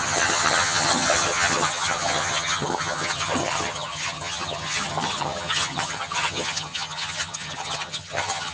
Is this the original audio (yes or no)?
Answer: no